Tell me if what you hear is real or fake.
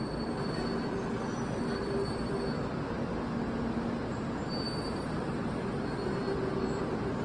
real